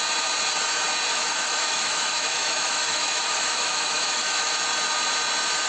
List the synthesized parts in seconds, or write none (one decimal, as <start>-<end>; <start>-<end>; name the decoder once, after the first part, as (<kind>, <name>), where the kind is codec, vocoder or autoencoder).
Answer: 1.1-4.5 (autoencoder, DAC-VAE)